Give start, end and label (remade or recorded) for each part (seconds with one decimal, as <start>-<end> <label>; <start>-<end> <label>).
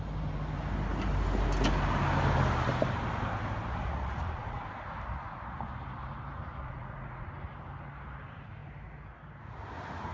0.0-3.8 recorded; 3.8-4.6 remade; 4.6-6.5 recorded; 6.5-7.3 remade; 7.3-10.1 recorded